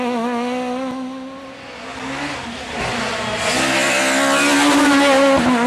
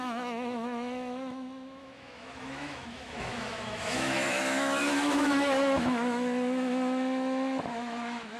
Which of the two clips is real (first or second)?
first